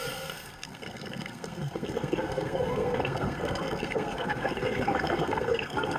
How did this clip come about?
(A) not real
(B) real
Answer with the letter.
A